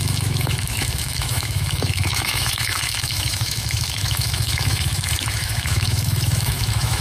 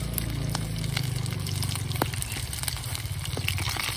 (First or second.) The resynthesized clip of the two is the first